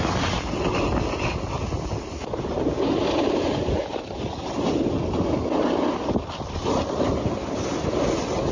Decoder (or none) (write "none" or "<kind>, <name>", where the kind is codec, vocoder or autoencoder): none